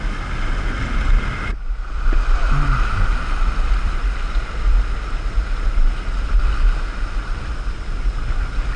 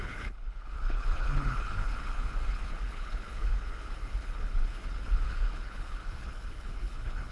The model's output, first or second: second